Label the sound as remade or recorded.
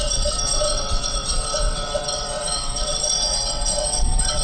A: remade